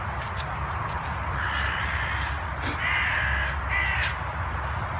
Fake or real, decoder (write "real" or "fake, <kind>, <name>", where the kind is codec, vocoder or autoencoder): real